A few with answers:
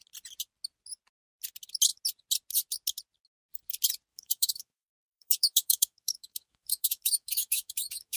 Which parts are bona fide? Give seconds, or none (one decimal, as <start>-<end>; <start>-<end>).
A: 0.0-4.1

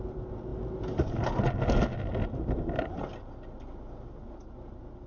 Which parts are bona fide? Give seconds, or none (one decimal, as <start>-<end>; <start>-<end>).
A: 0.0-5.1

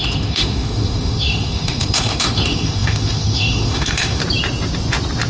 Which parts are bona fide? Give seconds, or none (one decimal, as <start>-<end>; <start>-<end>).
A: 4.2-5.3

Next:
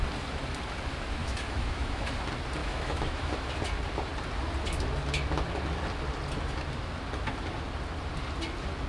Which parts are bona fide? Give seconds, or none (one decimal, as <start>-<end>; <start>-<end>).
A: 0.0-1.2; 2.1-2.6; 3.3-8.9

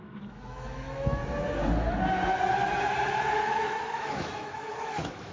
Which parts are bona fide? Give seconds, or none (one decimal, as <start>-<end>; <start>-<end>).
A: 1.2-3.4

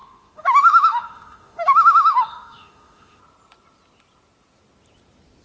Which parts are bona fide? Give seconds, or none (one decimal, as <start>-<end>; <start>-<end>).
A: 3.2-5.4

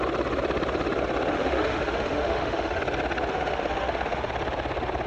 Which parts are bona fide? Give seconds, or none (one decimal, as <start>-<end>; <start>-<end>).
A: 0.0-1.3; 2.8-3.3; 4.3-5.1